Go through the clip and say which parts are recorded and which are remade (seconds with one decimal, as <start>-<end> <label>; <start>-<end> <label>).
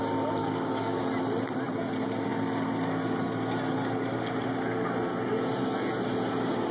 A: 0.0-0.4 recorded; 0.4-1.0 remade; 1.0-6.7 recorded